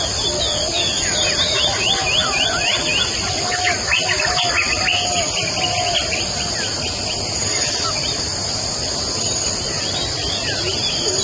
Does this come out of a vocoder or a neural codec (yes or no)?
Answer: no